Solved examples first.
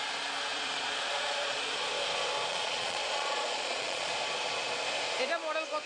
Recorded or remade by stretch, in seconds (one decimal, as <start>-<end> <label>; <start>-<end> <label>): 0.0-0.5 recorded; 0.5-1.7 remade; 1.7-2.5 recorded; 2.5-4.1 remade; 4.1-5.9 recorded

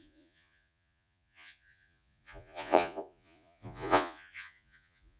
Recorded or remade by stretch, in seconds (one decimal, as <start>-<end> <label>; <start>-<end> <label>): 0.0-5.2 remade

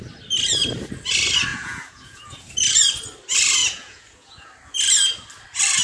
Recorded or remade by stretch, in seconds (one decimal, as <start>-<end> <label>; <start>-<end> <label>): 0.0-1.5 recorded; 1.5-2.5 remade; 2.5-3.6 recorded; 3.6-4.5 remade; 4.5-5.8 recorded

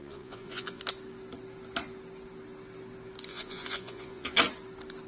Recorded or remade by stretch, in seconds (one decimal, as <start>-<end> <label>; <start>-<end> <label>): 0.0-0.8 remade; 0.8-3.3 recorded; 3.3-4.4 remade; 4.4-5.1 recorded

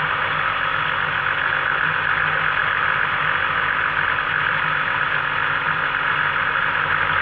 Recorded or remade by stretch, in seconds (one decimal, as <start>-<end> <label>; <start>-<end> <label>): 0.0-7.2 recorded

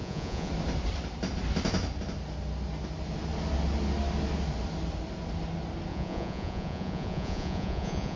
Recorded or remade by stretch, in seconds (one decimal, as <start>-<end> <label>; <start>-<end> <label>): 0.0-0.5 remade; 0.5-5.9 recorded; 5.9-8.2 remade